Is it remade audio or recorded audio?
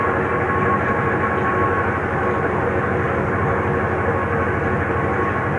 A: recorded